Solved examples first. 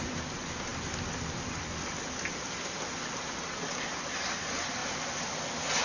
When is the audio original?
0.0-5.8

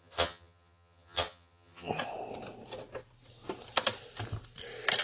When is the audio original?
1.9-5.0

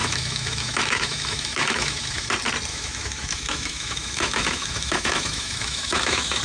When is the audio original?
2.3-2.7